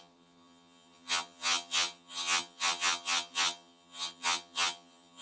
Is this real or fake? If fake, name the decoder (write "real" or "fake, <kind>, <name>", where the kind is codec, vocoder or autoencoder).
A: fake, vocoder, HiFi-GAN